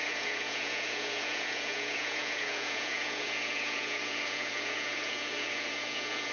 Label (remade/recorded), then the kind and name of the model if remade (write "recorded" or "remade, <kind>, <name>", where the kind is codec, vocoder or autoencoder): remade, vocoder, Vocos